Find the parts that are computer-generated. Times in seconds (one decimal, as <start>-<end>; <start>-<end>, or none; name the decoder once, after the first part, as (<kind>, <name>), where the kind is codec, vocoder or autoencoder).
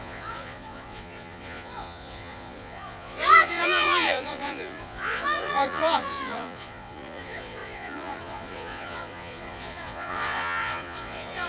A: 0.0-11.5 (vocoder, Vocos)